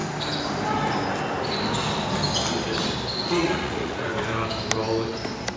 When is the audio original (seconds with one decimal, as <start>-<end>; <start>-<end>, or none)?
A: 0.0-3.4; 4.1-5.6